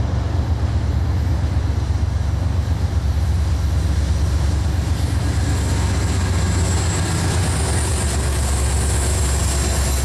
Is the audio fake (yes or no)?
no